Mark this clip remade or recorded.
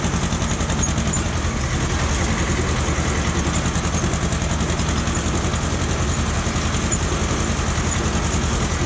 recorded